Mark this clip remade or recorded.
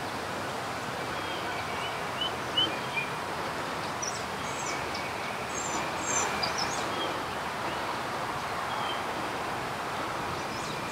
recorded